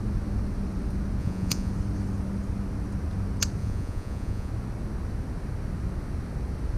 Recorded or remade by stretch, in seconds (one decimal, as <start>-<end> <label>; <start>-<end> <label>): 0.0-1.2 recorded; 1.2-1.7 remade; 1.7-3.6 recorded; 3.6-4.5 remade; 4.5-6.8 recorded